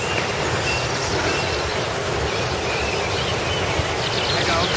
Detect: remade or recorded recorded